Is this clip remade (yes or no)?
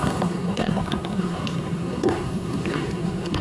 yes